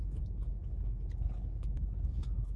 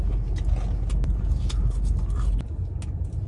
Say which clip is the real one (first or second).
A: second